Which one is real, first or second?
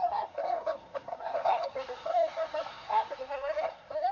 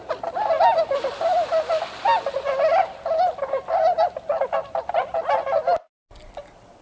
second